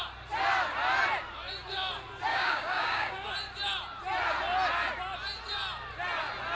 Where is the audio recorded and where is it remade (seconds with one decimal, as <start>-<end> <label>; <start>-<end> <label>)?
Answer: 0.0-2.3 recorded; 2.3-3.3 remade; 3.3-6.5 recorded